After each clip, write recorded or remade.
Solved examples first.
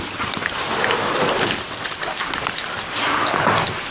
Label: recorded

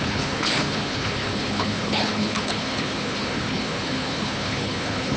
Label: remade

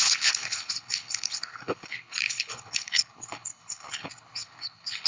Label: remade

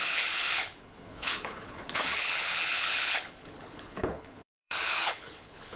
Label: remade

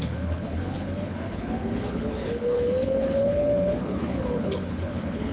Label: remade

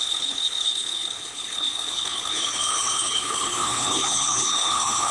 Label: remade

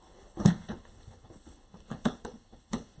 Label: remade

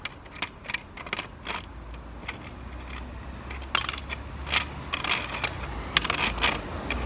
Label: recorded